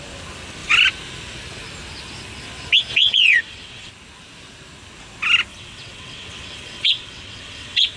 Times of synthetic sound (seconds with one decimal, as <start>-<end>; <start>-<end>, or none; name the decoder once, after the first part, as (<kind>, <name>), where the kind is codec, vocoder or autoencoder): 2.9-3.9 (vocoder, WaveNeXt); 5.5-8.0

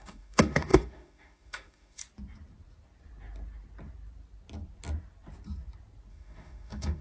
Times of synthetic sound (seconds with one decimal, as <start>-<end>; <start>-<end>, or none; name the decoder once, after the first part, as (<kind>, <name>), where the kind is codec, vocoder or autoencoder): 0.0-2.0 (autoencoder, DAC-VAE); 6.1-7.0

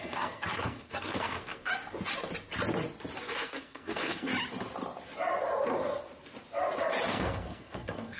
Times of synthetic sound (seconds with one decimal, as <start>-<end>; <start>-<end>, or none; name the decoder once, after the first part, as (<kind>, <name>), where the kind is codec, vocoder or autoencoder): 0.0-1.7 (codec, SNAC); 3.2-4.3; 7.1-8.2